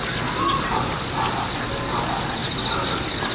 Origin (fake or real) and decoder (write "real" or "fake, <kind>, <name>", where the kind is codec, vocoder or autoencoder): real